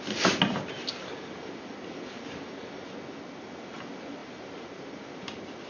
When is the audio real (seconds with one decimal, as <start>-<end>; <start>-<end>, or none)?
0.0-4.2